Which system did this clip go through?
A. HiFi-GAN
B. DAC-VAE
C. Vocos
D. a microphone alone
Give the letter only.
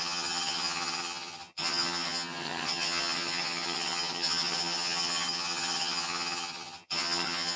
A